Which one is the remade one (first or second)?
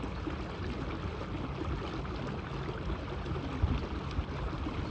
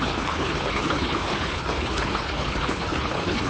second